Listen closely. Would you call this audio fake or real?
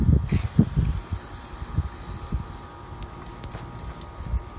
real